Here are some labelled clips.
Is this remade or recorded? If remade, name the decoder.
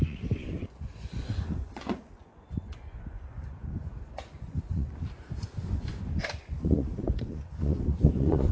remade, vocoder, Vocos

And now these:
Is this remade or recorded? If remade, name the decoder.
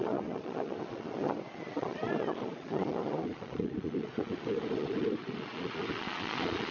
remade, vocoder, Vocos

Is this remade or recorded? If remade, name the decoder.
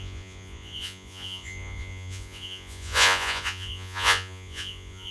remade, vocoder, Vocos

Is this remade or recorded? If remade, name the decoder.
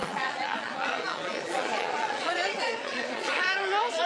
remade, vocoder, Vocos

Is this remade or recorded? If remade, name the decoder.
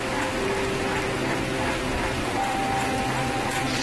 recorded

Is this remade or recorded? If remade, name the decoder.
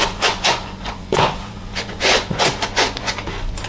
remade, vocoder, Vocos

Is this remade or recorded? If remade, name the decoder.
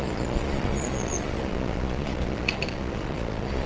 remade, vocoder, Vocos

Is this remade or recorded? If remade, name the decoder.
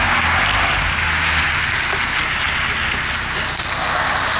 recorded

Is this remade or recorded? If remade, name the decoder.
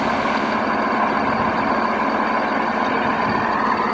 recorded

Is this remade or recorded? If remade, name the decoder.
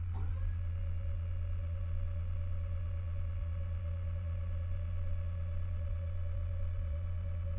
remade, vocoder, Vocos